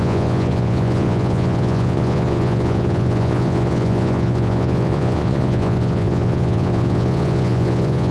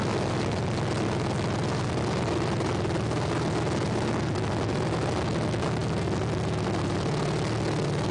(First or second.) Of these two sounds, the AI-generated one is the first